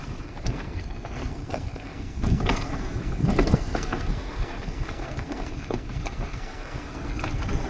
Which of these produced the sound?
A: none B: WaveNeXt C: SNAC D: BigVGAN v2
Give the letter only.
C